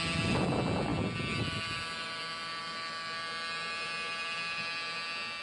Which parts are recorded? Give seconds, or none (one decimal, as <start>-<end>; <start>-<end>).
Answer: 0.0-5.4